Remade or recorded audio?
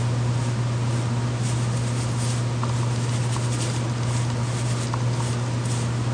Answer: recorded